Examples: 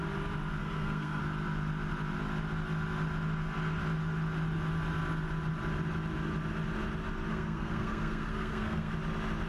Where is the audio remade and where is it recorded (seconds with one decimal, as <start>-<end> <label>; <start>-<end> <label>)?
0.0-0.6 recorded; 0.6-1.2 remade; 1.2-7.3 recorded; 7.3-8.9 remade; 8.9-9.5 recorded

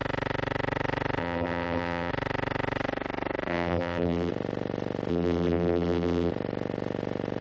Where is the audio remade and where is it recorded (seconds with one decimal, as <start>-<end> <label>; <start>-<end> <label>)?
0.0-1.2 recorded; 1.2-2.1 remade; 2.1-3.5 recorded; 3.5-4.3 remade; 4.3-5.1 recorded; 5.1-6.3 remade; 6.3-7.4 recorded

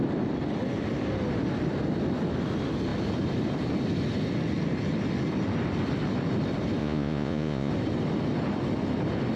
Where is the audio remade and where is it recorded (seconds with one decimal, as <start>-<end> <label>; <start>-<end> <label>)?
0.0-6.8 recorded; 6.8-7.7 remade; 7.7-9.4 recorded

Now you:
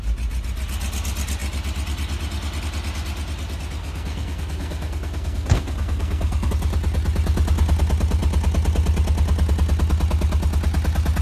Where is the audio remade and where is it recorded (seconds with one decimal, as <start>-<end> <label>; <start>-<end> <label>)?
0.0-3.8 recorded; 3.8-6.5 remade; 6.5-11.2 recorded

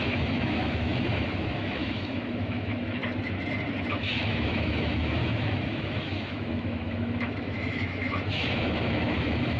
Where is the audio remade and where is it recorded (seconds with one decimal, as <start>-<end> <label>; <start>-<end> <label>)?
0.0-3.0 remade; 3.0-3.9 recorded; 3.9-9.6 remade

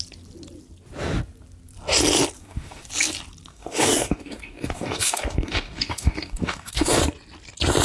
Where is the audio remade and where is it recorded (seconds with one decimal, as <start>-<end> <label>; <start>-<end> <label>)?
0.0-2.4 recorded; 2.4-2.9 remade; 2.9-3.5 recorded; 3.5-7.0 remade; 7.0-7.8 recorded